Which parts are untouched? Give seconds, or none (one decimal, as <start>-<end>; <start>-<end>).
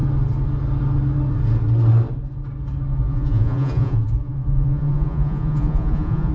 0.0-2.9